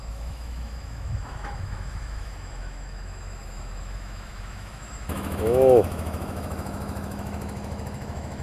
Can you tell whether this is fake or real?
fake